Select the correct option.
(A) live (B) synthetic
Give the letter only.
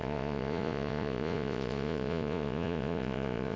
B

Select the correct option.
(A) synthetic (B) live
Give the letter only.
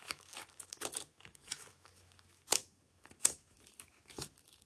A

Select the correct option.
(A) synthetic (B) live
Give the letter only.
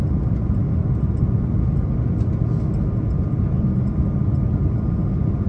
B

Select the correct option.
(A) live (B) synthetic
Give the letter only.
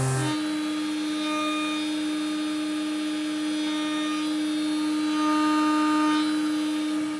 A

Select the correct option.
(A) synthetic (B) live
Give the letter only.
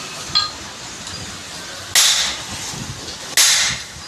B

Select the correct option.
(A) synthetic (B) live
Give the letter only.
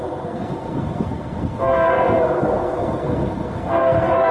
A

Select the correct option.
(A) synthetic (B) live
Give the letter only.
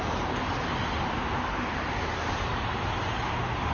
B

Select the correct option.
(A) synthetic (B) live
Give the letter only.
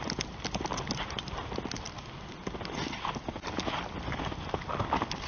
B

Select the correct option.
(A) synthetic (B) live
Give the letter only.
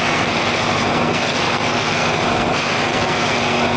A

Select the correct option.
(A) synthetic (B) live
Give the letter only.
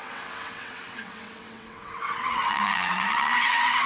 A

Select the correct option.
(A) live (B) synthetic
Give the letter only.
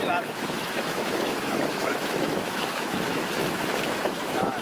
B